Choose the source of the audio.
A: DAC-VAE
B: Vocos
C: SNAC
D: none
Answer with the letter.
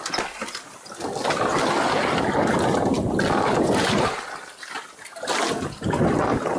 D